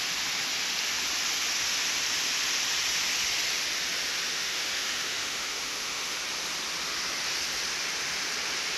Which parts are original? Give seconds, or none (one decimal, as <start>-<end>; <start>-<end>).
0.0-4.3; 6.2-8.8